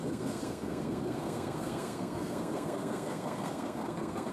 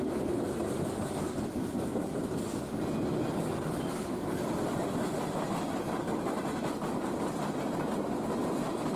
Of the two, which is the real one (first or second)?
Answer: second